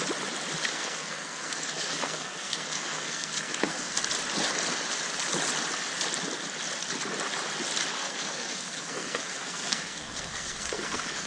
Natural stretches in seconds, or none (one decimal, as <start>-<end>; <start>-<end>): 0.0-0.7; 4.0-8.0